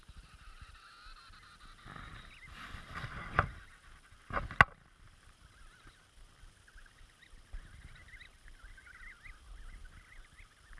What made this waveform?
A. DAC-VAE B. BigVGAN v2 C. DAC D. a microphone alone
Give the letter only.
D